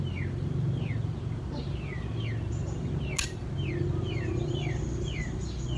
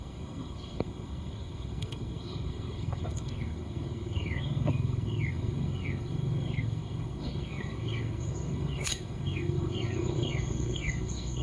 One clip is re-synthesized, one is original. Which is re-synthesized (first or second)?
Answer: second